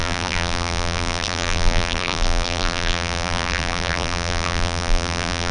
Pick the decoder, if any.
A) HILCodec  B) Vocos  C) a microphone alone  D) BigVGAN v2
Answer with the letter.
D